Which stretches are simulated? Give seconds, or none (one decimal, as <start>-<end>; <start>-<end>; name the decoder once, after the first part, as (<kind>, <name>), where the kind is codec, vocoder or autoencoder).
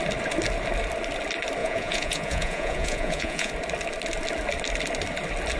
1.6-3.5 (vocoder, Vocos)